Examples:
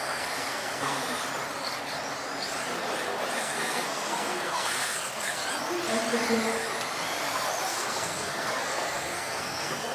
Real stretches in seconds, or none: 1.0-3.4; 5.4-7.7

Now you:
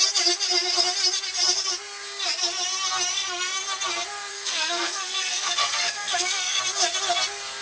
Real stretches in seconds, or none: 0.0-3.1; 3.6-4.3; 6.6-7.6